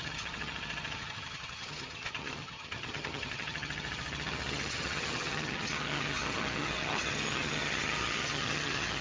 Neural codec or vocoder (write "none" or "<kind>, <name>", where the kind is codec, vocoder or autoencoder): vocoder, HiFi-GAN